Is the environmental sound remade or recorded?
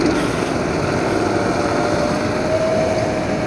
recorded